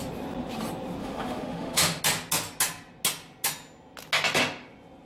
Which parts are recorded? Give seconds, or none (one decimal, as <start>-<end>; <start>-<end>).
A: 0.0-1.0; 2.0-5.1